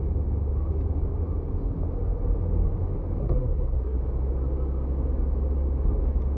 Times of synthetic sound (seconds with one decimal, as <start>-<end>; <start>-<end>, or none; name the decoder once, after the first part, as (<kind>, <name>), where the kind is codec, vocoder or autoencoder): 3.2-4.0 (codec, SNAC)